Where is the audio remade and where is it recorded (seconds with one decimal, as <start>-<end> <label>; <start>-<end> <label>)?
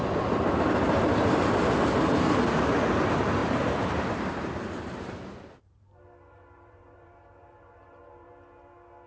0.0-3.4 recorded; 3.4-8.3 remade; 8.3-9.1 recorded